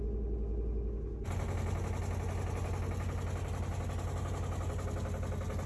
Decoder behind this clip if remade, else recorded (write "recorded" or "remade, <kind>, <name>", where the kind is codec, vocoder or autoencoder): recorded